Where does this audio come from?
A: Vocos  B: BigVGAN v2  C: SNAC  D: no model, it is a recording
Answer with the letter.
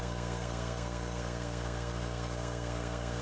C